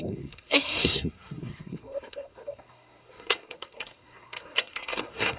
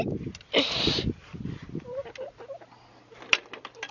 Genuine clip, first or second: second